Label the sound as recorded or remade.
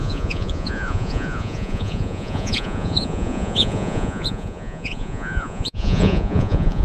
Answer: remade